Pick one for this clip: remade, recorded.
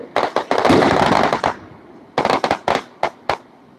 recorded